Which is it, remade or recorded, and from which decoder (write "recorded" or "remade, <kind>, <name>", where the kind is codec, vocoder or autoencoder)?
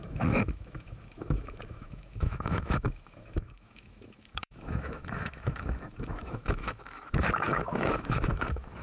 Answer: remade, autoencoder, DAC-VAE